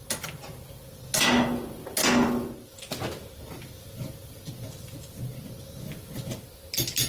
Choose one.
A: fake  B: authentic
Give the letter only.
B